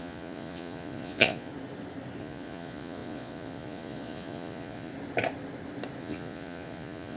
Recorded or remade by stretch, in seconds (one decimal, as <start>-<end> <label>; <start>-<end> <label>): 0.0-1.5 remade; 1.5-2.2 recorded; 2.2-4.9 remade; 4.9-6.0 recorded; 6.0-7.2 remade

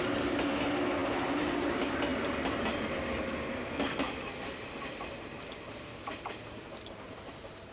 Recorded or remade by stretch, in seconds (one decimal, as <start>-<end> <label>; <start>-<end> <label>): 0.0-7.7 recorded